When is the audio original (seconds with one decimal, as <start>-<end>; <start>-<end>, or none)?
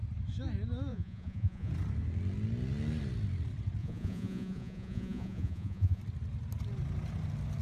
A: 0.0-0.9; 1.7-3.8; 6.0-7.6